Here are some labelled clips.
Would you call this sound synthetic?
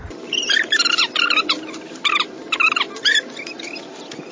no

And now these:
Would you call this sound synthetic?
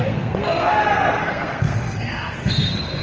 yes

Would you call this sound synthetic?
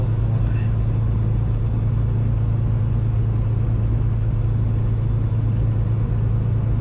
no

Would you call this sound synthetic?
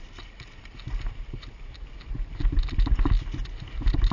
no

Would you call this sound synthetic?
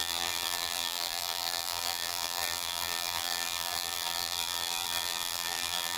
yes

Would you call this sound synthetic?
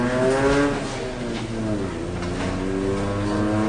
no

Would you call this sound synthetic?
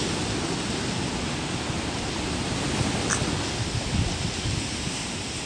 no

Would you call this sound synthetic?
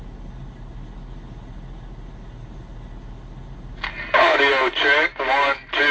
no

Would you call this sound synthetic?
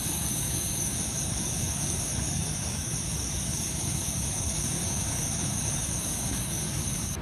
yes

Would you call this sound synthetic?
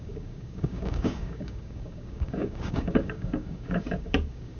yes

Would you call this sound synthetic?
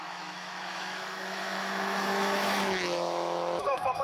yes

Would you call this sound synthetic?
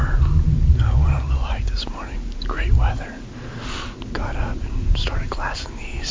no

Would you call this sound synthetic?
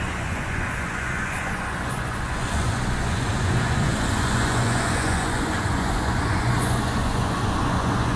yes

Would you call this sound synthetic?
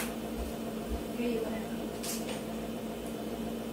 yes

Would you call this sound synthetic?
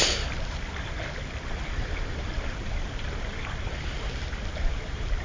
yes